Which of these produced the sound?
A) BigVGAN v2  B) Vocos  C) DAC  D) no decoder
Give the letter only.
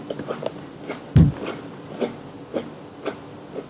D